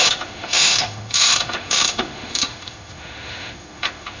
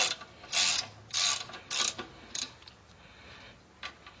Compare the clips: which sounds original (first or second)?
second